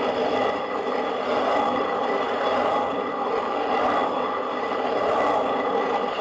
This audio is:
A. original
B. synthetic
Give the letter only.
A